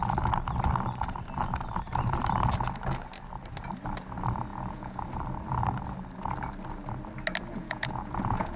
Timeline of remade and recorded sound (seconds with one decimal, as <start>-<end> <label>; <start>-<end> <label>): 0.0-4.5 recorded; 4.5-5.1 remade; 5.1-7.6 recorded; 7.6-8.6 remade